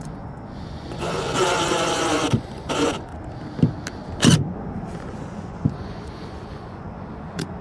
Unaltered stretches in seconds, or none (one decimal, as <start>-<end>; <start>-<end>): 3.1-4.4